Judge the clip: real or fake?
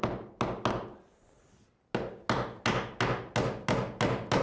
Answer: real